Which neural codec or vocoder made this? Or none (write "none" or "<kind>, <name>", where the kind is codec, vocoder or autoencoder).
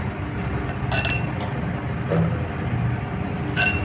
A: vocoder, BigVGAN v2